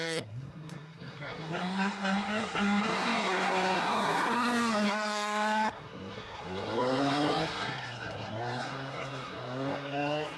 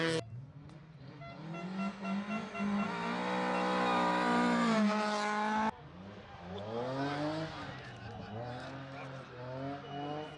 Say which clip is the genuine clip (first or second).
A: second